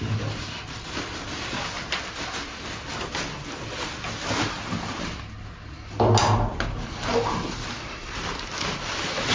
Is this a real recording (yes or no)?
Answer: yes